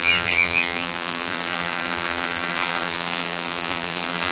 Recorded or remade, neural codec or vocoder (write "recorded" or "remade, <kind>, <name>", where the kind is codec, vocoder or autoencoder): remade, vocoder, BigVGAN v2